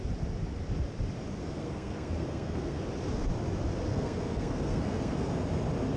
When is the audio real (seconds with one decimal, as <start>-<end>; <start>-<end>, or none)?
0.0-1.4; 2.8-3.9; 5.3-6.0